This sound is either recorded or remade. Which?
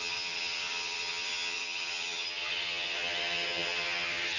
remade